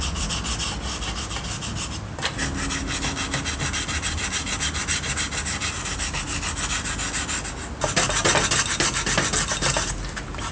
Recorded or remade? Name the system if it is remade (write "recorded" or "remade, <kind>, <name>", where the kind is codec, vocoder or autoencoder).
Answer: recorded